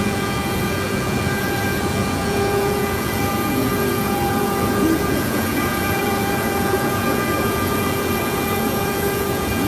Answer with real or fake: fake